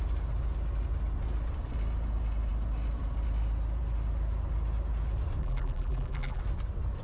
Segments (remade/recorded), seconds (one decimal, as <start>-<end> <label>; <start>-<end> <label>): 0.0-5.4 recorded; 5.4-6.4 remade; 6.4-7.0 recorded

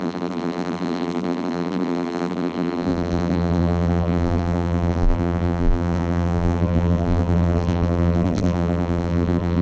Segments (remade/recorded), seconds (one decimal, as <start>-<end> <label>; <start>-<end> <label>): 0.0-9.6 remade

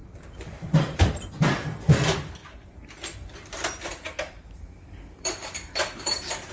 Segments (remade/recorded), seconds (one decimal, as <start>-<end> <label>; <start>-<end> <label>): 0.0-1.3 remade; 1.3-2.4 recorded; 2.4-6.5 remade

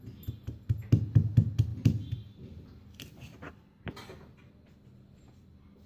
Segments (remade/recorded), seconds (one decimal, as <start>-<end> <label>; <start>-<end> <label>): 0.0-5.9 recorded

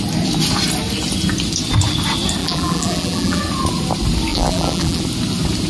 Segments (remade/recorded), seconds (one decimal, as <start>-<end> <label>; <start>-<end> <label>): 0.0-2.4 recorded; 2.4-3.4 remade; 3.4-4.3 recorded; 4.3-5.0 remade; 5.0-5.7 recorded

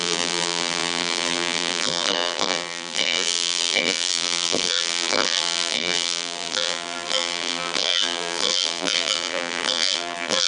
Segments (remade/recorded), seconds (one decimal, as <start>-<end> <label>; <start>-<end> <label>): 0.0-10.5 remade

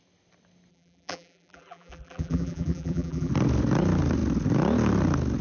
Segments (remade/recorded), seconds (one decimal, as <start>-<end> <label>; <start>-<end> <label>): 0.0-0.7 recorded; 0.7-3.3 remade; 3.3-5.4 recorded

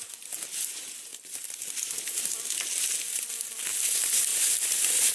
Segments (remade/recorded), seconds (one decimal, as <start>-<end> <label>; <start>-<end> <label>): 0.0-1.1 recorded; 1.1-1.6 remade; 1.6-4.3 recorded; 4.3-5.1 remade